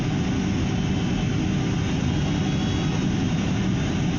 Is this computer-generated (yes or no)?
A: no